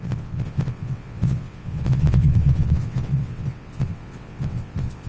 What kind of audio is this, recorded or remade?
remade